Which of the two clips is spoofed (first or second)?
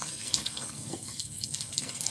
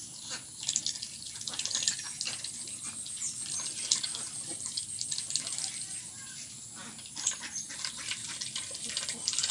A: first